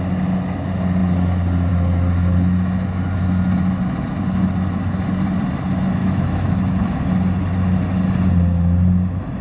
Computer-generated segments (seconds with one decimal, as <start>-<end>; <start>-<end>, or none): 6.0-6.6